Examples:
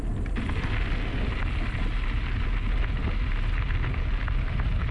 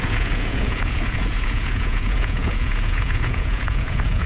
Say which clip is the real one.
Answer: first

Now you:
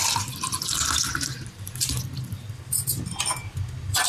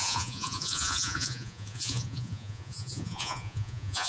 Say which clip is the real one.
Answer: first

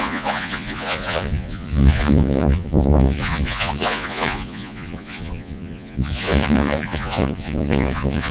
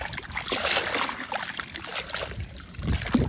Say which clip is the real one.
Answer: second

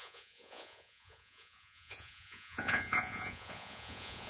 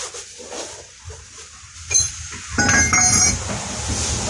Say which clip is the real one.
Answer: second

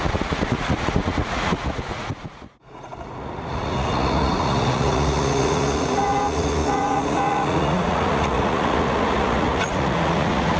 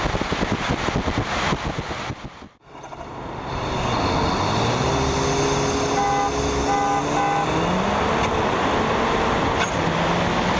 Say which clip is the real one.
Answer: second